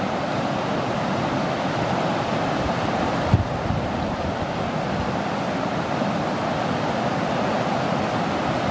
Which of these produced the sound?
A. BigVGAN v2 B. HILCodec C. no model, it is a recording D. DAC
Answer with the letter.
C